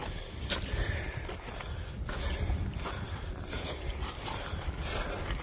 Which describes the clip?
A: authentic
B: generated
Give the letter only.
A